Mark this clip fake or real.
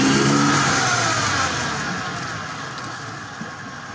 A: real